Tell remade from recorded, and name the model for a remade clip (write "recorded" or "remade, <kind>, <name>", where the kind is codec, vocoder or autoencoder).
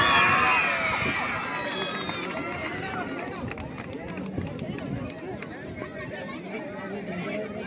recorded